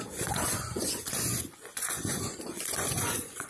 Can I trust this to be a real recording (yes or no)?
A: no